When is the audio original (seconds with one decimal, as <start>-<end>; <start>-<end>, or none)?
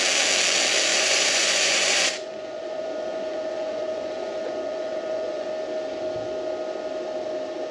0.0-0.9; 5.5-7.7